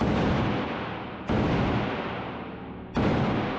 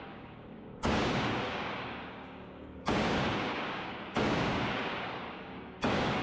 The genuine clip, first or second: first